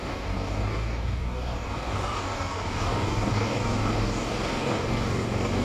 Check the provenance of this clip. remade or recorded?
remade